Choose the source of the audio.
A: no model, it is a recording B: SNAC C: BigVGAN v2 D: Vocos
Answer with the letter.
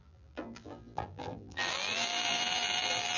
C